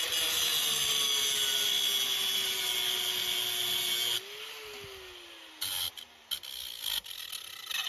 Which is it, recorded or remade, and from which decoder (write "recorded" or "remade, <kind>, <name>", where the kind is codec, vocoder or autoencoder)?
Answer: recorded